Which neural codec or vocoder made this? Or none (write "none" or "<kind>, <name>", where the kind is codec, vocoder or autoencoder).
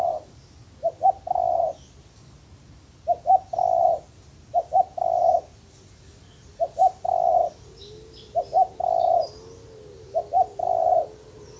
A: none